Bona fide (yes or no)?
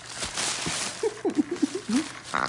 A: yes